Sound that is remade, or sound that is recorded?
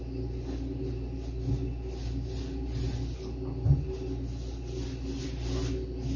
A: recorded